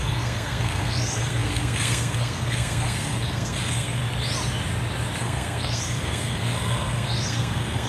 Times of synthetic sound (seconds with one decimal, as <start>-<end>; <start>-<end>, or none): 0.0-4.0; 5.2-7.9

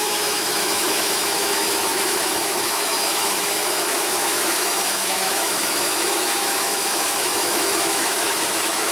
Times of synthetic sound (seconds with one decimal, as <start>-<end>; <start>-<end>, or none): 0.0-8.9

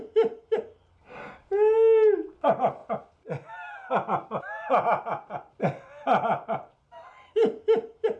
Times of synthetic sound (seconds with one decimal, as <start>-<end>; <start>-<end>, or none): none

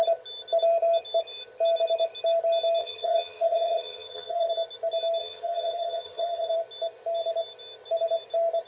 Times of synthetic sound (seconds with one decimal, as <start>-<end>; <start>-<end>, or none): 2.8-4.5; 5.2-6.5

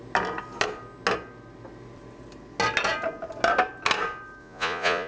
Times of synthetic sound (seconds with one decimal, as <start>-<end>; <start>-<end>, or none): 4.4-5.1

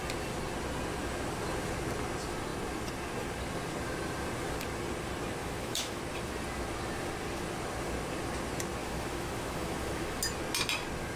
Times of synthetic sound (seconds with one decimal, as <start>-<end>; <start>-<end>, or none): 5.4-6.0; 8.8-10.2